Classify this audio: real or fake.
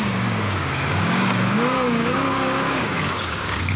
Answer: fake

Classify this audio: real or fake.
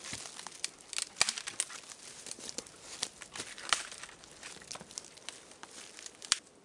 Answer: real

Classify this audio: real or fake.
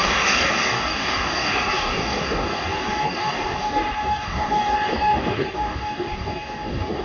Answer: fake